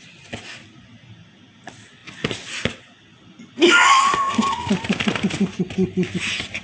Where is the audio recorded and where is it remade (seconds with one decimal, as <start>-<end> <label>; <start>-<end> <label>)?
0.0-3.7 recorded; 3.7-4.7 remade; 4.7-6.6 recorded